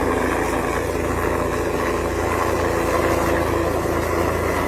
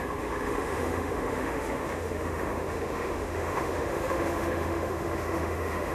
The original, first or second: first